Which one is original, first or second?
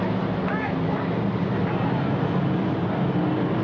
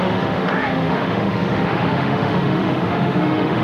first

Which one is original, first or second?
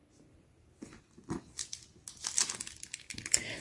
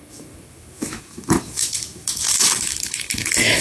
first